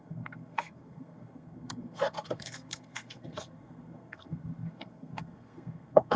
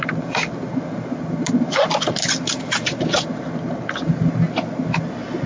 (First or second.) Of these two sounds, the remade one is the first